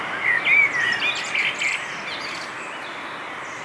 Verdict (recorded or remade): recorded